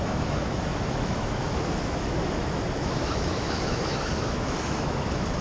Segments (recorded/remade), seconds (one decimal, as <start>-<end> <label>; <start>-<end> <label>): 0.0-5.4 remade